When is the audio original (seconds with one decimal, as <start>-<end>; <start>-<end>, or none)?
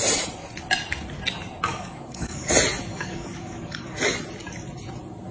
0.0-1.7; 2.5-2.9; 4.0-5.3